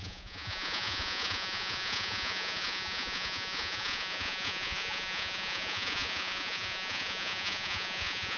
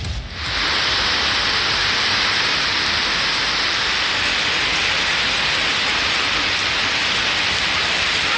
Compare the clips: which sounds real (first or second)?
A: second